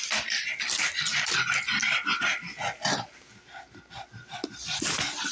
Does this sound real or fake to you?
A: fake